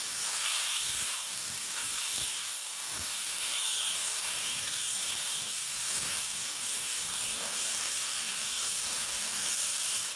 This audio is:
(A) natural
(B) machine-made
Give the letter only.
B